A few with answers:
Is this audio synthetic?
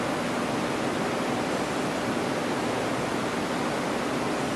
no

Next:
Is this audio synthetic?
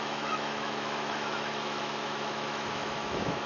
yes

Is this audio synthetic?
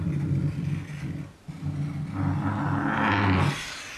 no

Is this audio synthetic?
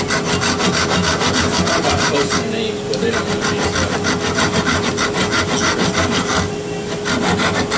no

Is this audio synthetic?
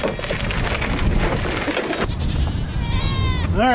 no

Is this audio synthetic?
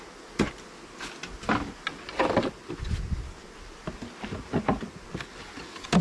no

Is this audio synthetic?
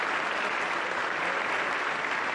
yes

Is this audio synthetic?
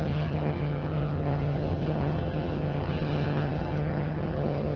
yes